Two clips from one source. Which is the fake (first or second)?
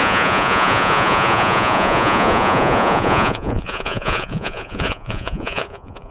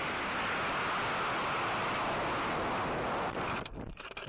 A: first